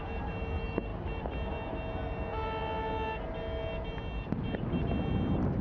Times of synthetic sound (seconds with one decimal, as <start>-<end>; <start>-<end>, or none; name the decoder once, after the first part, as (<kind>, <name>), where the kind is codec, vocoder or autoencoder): none